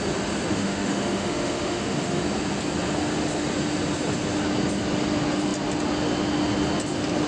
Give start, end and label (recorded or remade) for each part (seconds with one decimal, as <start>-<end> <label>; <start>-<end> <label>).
0.0-0.5 recorded; 0.5-2.2 remade; 2.2-7.3 recorded